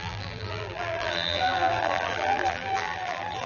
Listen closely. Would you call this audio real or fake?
fake